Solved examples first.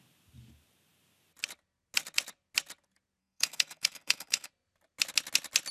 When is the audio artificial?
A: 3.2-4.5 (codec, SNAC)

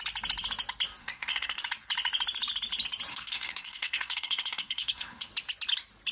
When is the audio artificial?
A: 1.0-1.6 (codec, SNAC); 3.1-5.3